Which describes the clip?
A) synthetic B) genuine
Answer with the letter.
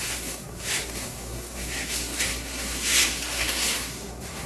A